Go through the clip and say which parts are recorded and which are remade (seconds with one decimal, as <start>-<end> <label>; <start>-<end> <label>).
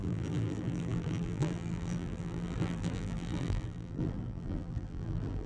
0.0-5.5 remade